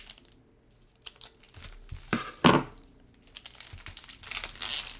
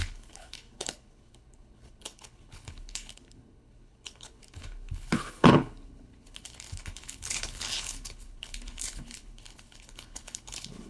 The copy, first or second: second